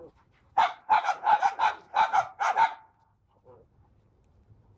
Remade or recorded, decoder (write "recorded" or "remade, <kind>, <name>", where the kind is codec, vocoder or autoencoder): remade, vocoder, BigVGAN v2